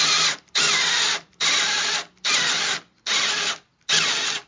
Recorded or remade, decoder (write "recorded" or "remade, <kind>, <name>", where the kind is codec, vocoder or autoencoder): recorded